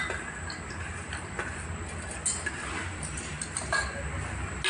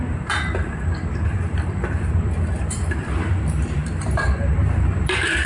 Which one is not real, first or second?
second